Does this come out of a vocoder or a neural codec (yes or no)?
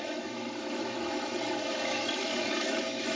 yes